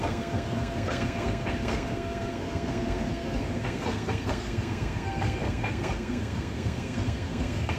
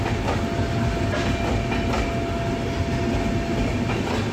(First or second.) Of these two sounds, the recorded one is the second